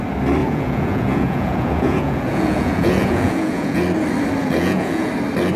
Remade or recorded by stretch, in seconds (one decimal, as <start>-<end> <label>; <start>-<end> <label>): 0.0-0.4 recorded; 0.4-3.8 remade; 3.8-4.4 recorded; 4.4-5.1 remade; 5.1-5.6 recorded